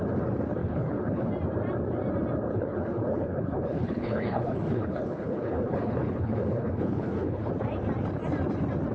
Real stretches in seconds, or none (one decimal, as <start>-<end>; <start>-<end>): 0.0-0.6; 1.3-2.5; 7.5-8.9